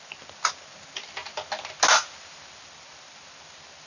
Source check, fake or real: real